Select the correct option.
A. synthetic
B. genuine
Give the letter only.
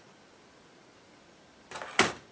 B